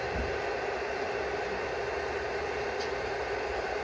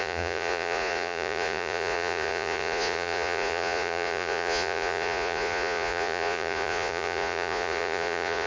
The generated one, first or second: second